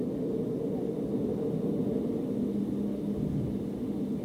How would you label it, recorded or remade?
recorded